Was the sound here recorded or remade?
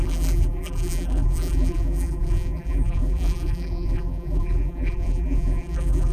remade